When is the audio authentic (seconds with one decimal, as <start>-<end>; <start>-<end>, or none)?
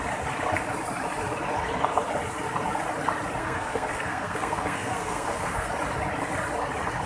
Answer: 0.0-3.4; 5.7-7.1